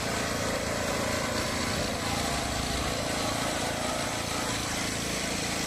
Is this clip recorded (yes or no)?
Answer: no